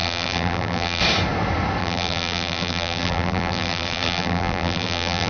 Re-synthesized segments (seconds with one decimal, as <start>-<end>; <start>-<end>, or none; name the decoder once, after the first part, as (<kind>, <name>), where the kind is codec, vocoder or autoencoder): 0.0-1.0 (vocoder, BigVGAN v2); 1.8-5.3